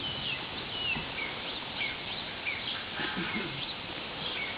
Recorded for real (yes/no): yes